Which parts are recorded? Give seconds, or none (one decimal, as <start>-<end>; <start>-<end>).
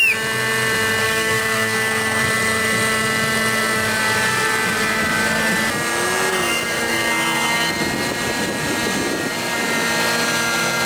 0.0-1.0; 2.2-6.3; 7.8-10.9